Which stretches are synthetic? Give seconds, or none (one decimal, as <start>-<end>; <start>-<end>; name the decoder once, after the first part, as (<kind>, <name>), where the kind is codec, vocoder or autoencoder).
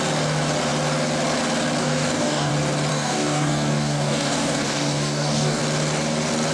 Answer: 1.8-2.5 (codec, DAC); 2.9-5.6